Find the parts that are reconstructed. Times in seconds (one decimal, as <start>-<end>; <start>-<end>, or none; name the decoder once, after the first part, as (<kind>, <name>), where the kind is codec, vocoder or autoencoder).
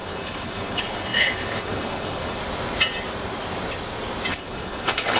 0.0-2.4 (codec, HILCodec); 4.3-5.2